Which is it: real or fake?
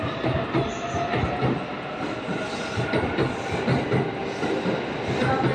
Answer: real